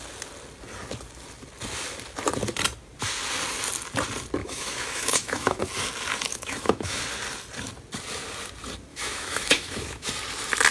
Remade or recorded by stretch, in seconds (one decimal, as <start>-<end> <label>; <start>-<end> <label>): 0.0-4.4 recorded; 4.4-5.6 remade; 5.6-6.3 recorded; 6.3-7.0 remade; 7.0-8.9 recorded; 8.9-10.1 remade; 10.1-10.7 recorded